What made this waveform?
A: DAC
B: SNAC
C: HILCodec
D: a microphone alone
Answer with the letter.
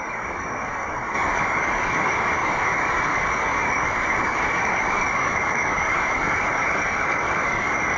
A